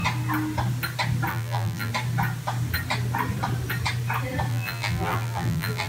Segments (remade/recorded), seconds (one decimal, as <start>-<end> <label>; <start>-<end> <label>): 0.0-1.3 recorded; 1.3-1.9 remade; 1.9-4.5 recorded; 4.5-5.9 remade